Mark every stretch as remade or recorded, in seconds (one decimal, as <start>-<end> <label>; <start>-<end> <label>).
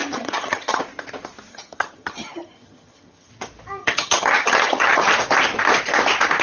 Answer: 0.0-0.8 remade; 0.8-1.5 recorded; 1.5-3.3 remade; 3.3-3.8 recorded; 3.8-5.1 remade; 5.1-6.4 recorded